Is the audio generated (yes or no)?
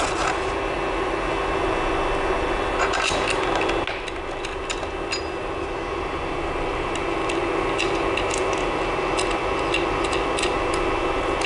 no